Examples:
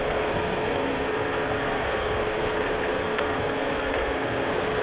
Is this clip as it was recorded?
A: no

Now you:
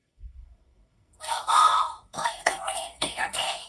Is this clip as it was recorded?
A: no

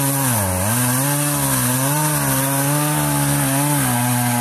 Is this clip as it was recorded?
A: yes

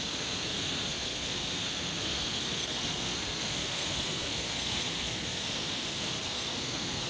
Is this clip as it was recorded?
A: no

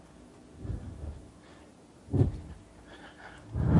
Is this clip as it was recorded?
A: yes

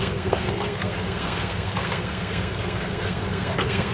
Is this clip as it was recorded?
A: no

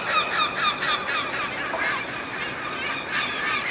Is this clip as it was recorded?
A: yes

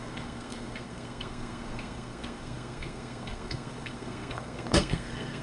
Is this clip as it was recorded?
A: no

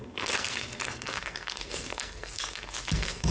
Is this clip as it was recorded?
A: no